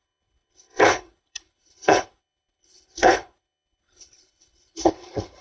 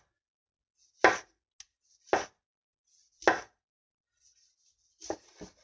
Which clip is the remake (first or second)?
first